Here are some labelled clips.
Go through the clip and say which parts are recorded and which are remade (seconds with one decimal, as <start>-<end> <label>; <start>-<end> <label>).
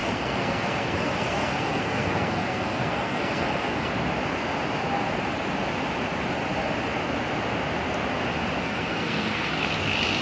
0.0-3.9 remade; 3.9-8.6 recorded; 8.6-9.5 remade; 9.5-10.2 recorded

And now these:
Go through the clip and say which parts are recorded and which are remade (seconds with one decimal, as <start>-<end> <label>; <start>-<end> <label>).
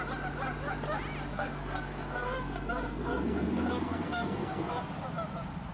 0.0-1.3 recorded; 1.3-4.7 remade; 4.7-5.7 recorded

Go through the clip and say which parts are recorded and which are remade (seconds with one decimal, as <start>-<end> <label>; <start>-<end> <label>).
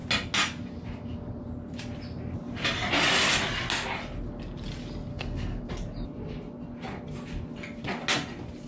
0.0-5.1 recorded; 5.1-5.7 remade; 5.7-8.7 recorded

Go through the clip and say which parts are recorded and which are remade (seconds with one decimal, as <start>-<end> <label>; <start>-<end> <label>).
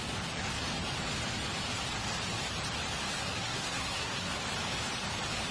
0.0-3.2 recorded; 3.2-4.4 remade; 4.4-5.5 recorded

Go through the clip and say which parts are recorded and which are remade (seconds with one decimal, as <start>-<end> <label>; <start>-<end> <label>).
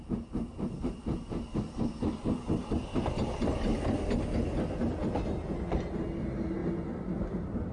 0.0-7.7 recorded